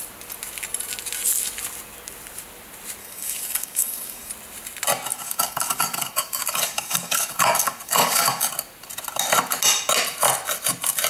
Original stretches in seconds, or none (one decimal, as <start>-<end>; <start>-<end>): 0.0-3.0; 4.3-5.1; 8.5-11.1